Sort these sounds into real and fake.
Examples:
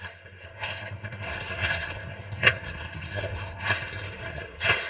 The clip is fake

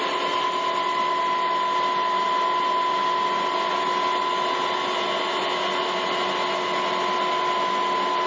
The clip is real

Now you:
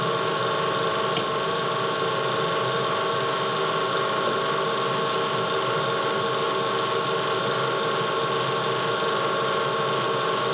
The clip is real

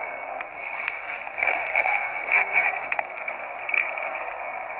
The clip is fake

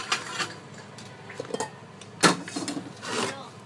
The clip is real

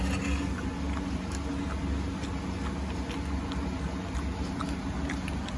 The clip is real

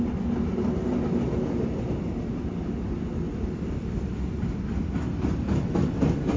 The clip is real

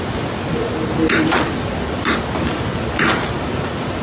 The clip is real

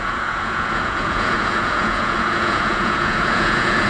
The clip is fake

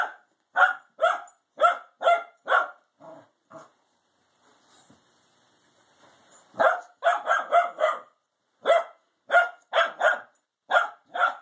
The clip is real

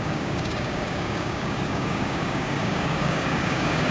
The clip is fake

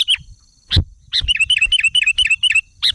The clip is fake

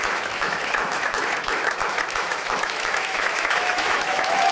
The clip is fake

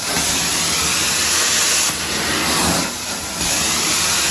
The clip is real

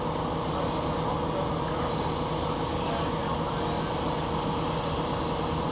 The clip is real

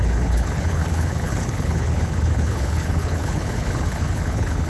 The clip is fake